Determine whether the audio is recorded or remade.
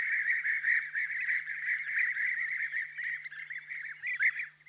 recorded